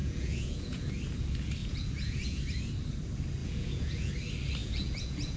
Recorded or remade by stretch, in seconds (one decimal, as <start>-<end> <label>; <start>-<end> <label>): 0.0-0.9 remade; 0.9-1.6 recorded; 1.6-2.4 remade; 2.4-3.4 recorded; 3.4-4.1 remade; 4.1-4.6 recorded; 4.6-5.4 remade